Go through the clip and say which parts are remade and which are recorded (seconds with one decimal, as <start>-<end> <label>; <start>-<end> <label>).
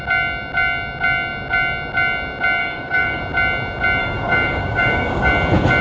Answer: 0.0-2.6 recorded; 2.6-3.2 remade; 3.2-4.0 recorded; 4.0-5.3 remade; 5.3-5.8 recorded